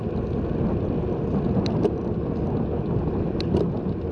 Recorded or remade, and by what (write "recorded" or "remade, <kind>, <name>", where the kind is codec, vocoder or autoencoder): recorded